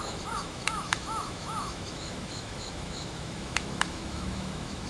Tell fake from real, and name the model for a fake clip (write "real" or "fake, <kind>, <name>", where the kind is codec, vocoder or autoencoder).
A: fake, autoencoder, DAC-VAE